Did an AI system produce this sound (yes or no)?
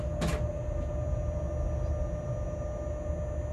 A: no